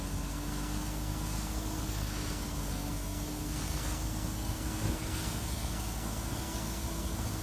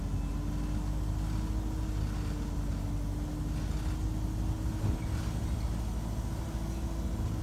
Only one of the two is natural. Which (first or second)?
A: second